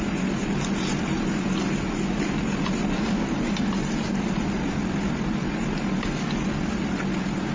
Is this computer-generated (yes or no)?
no